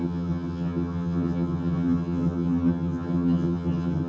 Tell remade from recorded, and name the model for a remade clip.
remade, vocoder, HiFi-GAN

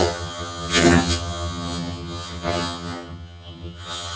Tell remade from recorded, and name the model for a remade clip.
remade, vocoder, HiFi-GAN